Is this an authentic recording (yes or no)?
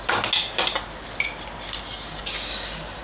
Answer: yes